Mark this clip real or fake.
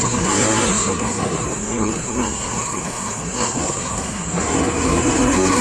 fake